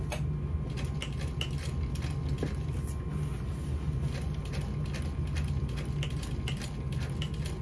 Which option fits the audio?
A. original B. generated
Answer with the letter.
A